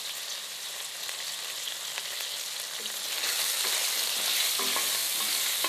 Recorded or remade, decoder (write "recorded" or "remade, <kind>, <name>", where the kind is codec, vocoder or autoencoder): recorded